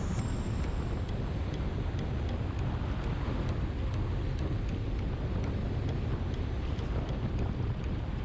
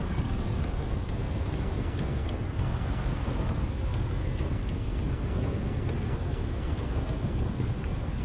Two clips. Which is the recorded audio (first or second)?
first